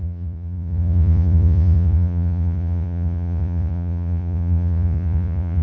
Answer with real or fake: fake